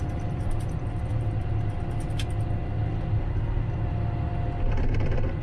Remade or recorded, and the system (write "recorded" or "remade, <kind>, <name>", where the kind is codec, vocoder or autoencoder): recorded